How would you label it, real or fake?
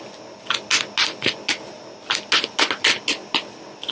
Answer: real